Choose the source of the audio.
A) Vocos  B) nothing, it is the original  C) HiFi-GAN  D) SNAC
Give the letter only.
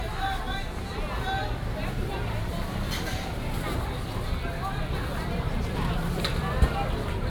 B